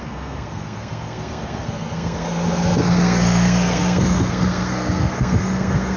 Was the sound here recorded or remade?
remade